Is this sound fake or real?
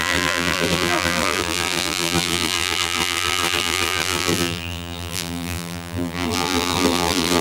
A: fake